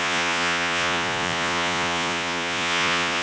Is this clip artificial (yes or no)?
yes